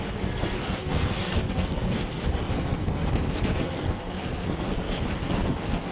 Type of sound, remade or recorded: remade